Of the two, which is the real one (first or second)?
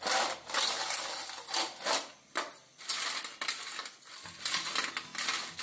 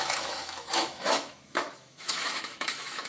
first